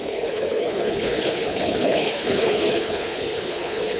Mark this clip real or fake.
fake